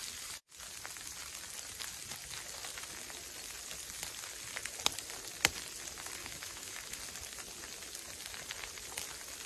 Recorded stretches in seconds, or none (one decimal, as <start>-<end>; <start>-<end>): 0.0-6.2; 7.0-9.5